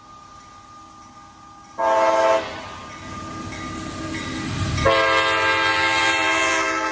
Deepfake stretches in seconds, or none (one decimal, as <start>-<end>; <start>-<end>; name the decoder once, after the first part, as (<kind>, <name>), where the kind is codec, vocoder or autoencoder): 5.7-6.9 (vocoder, BigVGAN v2)